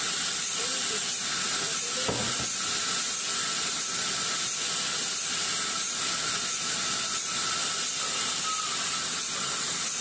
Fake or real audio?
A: real